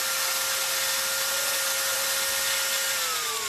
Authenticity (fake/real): real